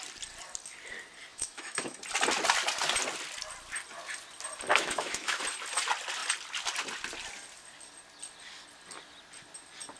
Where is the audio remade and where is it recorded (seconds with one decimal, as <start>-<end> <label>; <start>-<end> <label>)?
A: 0.0-1.3 recorded; 1.3-2.0 remade; 2.0-4.7 recorded; 4.7-5.4 remade; 5.4-10.0 recorded